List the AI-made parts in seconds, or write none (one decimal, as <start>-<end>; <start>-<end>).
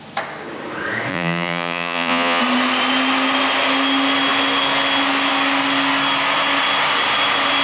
1.1-2.4